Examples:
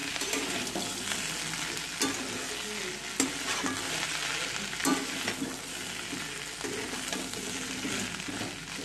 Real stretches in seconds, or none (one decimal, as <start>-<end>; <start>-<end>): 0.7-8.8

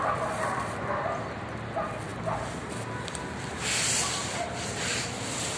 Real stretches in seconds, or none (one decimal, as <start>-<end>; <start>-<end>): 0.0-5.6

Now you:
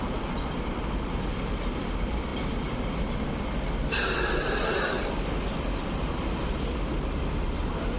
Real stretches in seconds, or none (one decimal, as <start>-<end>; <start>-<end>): 0.0-8.0